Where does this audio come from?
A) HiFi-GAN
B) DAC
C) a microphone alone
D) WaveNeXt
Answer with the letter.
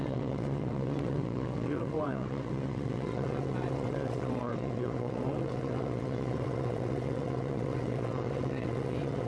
D